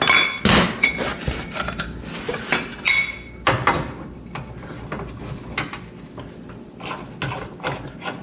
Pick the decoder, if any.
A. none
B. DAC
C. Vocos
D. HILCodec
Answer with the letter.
A